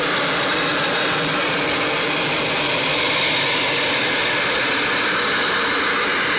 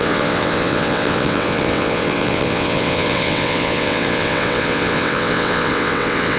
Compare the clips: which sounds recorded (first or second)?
first